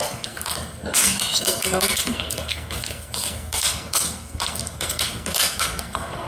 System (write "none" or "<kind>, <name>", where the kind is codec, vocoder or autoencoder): codec, SNAC